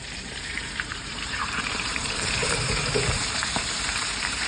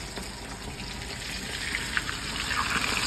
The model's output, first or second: first